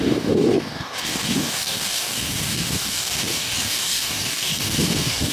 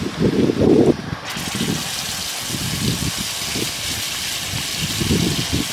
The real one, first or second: second